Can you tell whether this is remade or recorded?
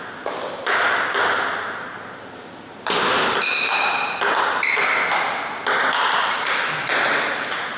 recorded